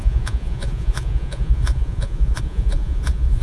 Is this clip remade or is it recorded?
remade